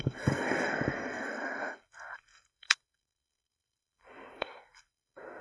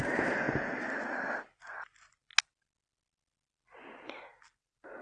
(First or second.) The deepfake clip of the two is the first